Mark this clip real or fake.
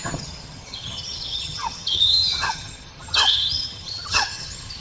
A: fake